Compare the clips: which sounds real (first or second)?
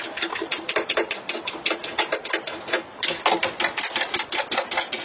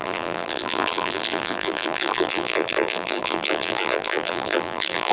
first